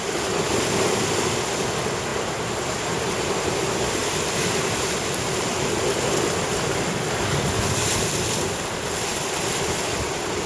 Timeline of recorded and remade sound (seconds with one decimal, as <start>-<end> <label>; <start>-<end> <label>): 0.0-2.1 recorded; 2.1-3.6 remade; 3.6-4.0 recorded; 4.0-5.6 remade; 5.6-9.1 recorded; 9.1-10.5 remade